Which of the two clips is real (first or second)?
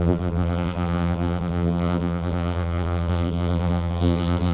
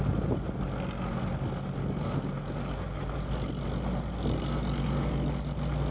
second